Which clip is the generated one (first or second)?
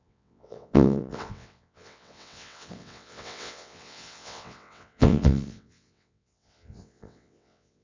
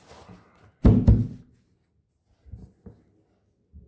first